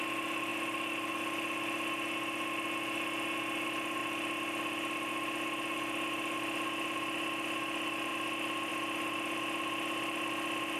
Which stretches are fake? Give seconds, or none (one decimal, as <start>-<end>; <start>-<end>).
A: none

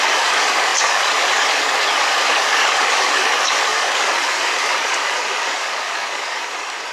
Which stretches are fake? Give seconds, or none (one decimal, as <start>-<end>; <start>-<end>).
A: 0.0-6.9

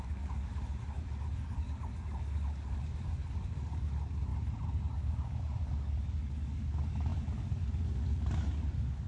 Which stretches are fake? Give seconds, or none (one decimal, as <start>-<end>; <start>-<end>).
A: 0.0-4.3; 4.9-9.1

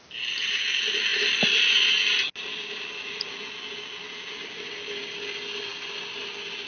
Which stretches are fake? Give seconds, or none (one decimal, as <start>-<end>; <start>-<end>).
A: none

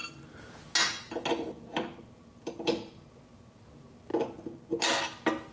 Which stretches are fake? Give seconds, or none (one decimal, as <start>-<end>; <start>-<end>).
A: none

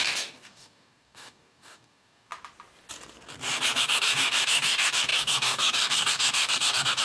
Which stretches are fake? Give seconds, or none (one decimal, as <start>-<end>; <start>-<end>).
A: 0.0-2.3; 3.8-7.0